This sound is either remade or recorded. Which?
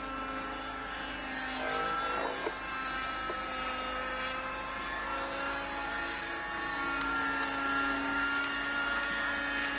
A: recorded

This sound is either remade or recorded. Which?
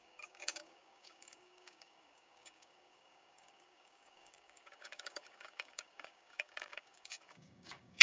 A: remade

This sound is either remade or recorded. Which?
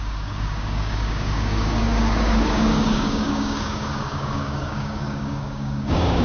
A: remade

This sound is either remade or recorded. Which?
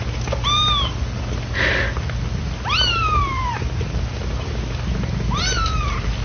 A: recorded